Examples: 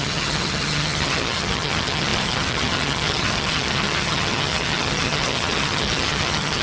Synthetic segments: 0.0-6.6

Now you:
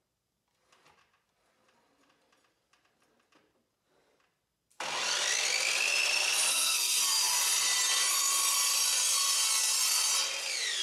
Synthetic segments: 6.5-7.0